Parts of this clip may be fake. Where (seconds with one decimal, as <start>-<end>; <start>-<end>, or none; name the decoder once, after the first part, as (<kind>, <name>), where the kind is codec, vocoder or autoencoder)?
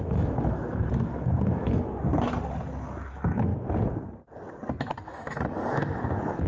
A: 0.0-2.1 (autoencoder, DAC-VAE); 3.1-3.5; 5.0-6.5